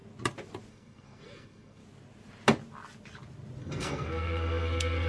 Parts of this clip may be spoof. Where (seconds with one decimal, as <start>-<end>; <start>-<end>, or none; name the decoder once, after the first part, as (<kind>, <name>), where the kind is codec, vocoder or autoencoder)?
0.7-1.8 (codec, SNAC); 3.6-5.1

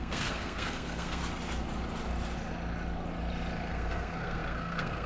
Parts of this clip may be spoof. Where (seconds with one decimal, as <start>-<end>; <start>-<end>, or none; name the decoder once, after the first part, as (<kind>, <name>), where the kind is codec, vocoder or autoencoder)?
0.0-1.2 (codec, SNAC); 3.7-5.1

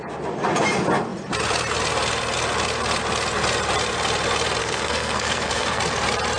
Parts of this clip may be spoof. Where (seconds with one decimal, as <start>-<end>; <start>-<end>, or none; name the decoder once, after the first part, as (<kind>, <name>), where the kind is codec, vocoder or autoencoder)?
4.6-5.8 (codec, SNAC)

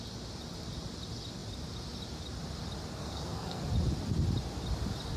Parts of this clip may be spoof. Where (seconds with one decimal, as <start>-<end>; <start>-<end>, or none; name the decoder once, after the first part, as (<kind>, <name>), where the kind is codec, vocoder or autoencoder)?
3.0-3.6 (codec, SNAC)

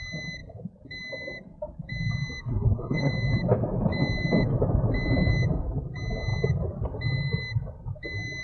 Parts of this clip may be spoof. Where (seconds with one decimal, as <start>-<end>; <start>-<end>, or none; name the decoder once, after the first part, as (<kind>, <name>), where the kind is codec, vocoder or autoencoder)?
2.5-3.1 (codec, SNAC)

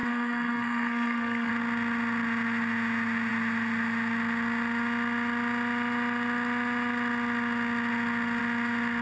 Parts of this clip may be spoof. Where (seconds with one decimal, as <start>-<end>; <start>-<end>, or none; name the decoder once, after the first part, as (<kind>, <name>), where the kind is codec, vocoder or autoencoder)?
0.0-1.5 (codec, SNAC)

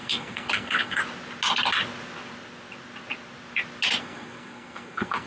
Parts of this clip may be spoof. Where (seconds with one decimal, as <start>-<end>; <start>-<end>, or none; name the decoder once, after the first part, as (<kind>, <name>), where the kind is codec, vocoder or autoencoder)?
0.0-1.0 (codec, SNAC); 4.0-5.3

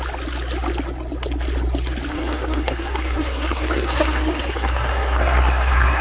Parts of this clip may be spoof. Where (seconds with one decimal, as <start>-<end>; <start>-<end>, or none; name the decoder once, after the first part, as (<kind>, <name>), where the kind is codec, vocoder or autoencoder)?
2.1-6.0 (codec, SNAC)